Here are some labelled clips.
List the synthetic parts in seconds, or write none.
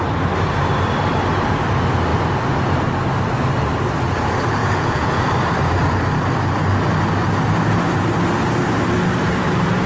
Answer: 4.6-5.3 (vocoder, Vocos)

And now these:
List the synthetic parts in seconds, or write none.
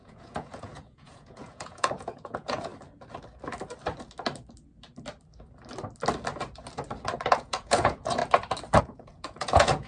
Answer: 0.0-2.7 (vocoder, Vocos); 7.3-8.2; 8.8-9.9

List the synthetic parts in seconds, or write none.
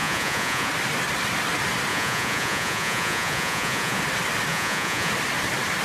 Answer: 0.0-0.7 (vocoder, Vocos); 1.9-4.0; 4.5-5.1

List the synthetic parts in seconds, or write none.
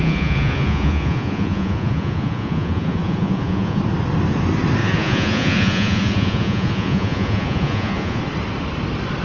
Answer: 0.0-3.8 (vocoder, Vocos); 4.8-8.2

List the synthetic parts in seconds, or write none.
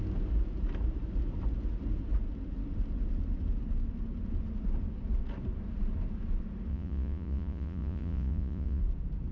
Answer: 6.7-8.8 (vocoder, Vocos)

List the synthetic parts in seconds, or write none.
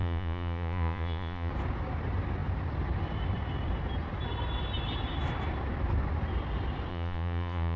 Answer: 0.0-1.5 (vocoder, Vocos); 6.9-7.8